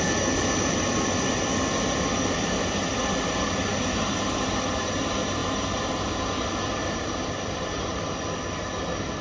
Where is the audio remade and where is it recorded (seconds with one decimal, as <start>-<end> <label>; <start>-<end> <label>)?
0.0-3.7 recorded; 3.7-4.5 remade; 4.5-5.4 recorded; 5.4-6.1 remade; 6.1-6.8 recorded; 6.8-8.0 remade; 8.0-9.2 recorded